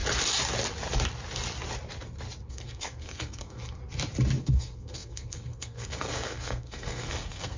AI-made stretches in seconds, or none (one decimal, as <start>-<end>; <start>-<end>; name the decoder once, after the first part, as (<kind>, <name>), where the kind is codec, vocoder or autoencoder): 2.5-3.8 (codec, SNAC); 4.4-7.6